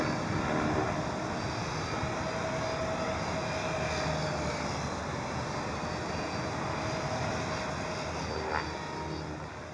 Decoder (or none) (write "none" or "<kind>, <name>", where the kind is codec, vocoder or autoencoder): none